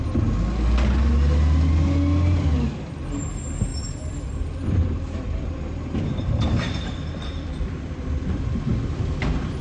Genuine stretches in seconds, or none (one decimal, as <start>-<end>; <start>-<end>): 0.0-3.7; 8.2-9.6

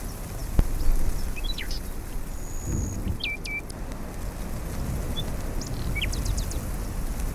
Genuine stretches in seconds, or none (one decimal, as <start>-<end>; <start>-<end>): 0.0-7.3

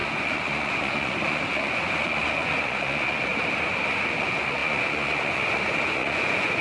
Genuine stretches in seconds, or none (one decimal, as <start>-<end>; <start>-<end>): 3.3-3.9

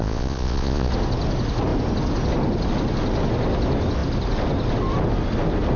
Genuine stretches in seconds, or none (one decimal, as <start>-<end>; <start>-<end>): 0.9-5.8

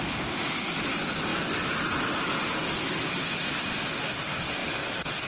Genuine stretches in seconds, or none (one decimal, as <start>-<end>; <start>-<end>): 0.0-5.3

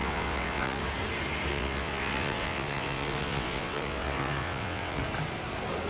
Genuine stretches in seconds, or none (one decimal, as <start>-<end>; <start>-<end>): 0.8-1.5; 5.0-5.9

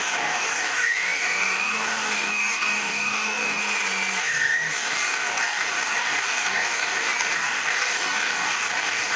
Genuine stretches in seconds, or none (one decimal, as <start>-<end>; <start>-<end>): 3.6-4.2

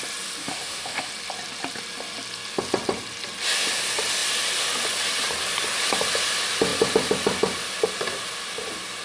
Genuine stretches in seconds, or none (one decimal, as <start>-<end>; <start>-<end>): 0.0-0.4; 1.1-9.0